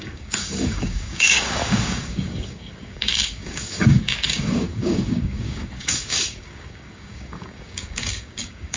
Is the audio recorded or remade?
remade